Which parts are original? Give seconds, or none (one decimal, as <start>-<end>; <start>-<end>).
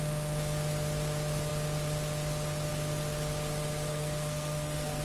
0.0-3.9